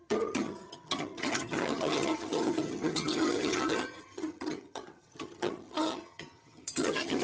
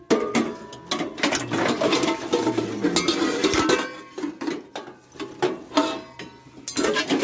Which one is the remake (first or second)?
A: first